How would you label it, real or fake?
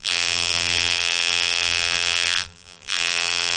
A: fake